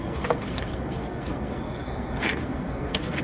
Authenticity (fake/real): fake